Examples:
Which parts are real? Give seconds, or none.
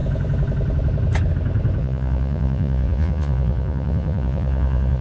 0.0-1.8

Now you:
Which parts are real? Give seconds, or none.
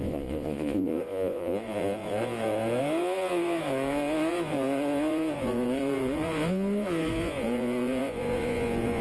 none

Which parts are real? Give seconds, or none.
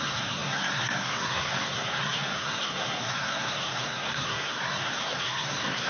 none